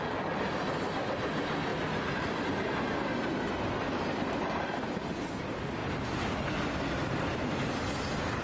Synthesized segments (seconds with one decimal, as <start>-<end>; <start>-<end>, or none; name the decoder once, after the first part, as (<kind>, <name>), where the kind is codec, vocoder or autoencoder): none